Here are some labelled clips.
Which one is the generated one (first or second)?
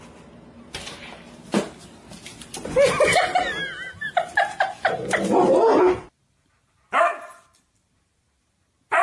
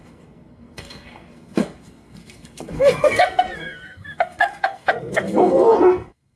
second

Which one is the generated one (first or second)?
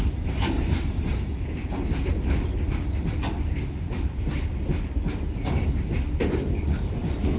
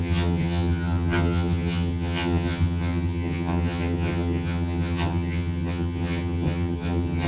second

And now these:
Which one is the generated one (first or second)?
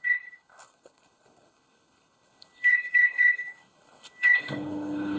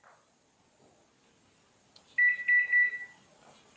first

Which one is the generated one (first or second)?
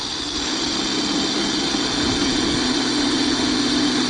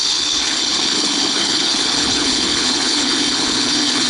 second